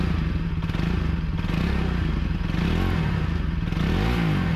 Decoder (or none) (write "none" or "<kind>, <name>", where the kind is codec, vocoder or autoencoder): none